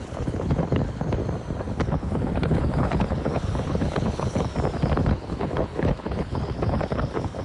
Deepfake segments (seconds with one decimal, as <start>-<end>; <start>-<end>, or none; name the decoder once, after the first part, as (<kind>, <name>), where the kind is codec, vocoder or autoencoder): 0.0-1.2 (codec, HILCodec); 1.7-4.5; 5.0-7.4